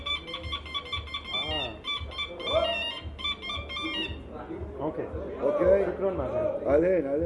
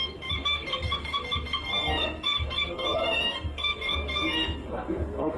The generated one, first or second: second